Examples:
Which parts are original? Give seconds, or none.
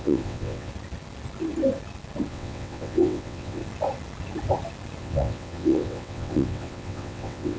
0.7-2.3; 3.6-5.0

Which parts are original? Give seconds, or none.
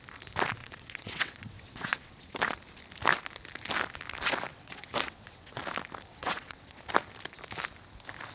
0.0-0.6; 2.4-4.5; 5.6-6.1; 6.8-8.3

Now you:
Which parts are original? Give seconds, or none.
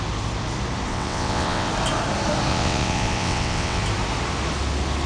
0.0-0.9; 1.7-2.5; 3.8-5.1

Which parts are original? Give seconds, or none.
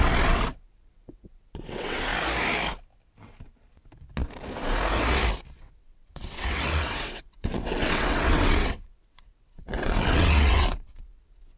2.1-5.6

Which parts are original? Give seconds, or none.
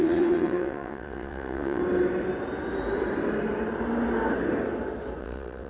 1.8-5.2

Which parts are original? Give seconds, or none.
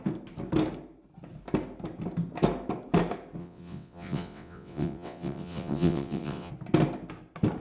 0.0-3.4; 6.5-7.6